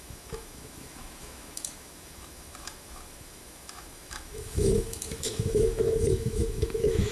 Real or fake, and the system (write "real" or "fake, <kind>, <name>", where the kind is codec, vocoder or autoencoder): fake, autoencoder, DAC-VAE